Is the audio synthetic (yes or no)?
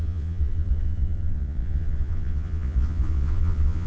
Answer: yes